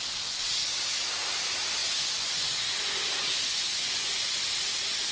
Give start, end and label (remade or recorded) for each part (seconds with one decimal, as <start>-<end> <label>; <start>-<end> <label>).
0.0-1.8 recorded; 1.8-4.5 remade; 4.5-5.1 recorded